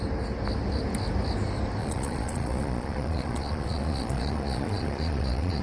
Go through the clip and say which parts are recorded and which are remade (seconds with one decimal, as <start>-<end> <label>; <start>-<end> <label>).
0.0-1.8 recorded; 1.8-5.6 remade